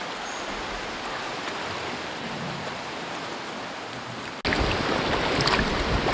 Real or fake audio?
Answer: real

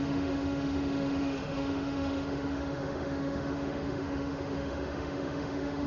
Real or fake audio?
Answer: fake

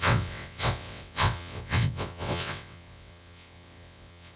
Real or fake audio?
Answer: fake